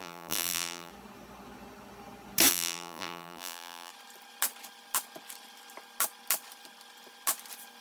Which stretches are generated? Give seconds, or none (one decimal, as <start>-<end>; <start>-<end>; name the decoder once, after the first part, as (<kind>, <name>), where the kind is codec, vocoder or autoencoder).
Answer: 0.0-0.9 (vocoder, BigVGAN v2); 2.5-3.9